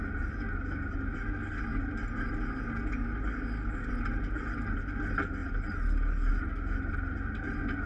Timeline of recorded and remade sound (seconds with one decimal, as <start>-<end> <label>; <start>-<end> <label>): 0.0-7.9 recorded